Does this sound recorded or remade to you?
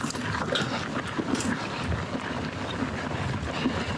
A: recorded